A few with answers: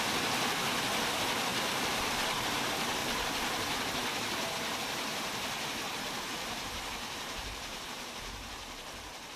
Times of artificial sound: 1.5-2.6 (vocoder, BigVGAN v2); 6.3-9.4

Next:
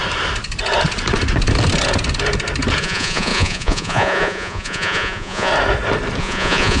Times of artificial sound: 2.8-5.5 (vocoder, Vocos); 6.2-6.8